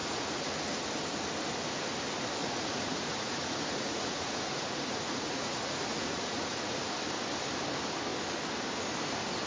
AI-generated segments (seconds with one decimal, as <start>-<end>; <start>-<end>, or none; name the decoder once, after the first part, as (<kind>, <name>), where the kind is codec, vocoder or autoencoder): 0.0-0.6 (vocoder, Vocos); 2.4-6.8